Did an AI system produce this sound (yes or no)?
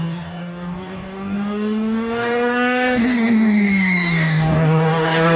yes